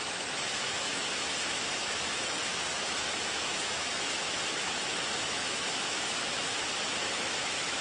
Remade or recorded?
remade